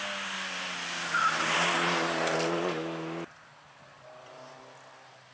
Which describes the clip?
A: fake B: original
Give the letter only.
B